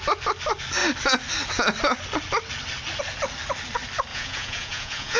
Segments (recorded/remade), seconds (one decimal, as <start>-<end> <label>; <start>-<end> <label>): 0.0-4.1 recorded; 4.1-5.2 remade